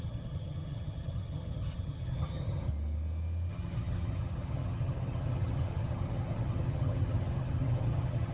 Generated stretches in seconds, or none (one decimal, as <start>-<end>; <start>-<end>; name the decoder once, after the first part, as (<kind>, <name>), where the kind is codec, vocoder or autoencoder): 0.0-2.7 (vocoder, HiFi-GAN); 3.5-8.3